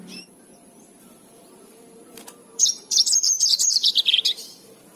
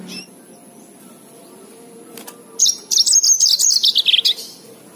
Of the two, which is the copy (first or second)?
first